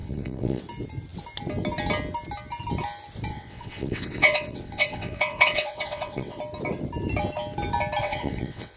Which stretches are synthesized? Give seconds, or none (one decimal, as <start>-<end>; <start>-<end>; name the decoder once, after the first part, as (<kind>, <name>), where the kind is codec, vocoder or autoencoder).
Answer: 0.0-0.6 (vocoder, WaveNeXt); 3.3-6.4; 8.0-8.8